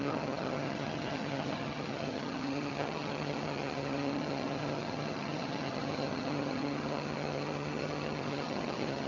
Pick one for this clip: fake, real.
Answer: fake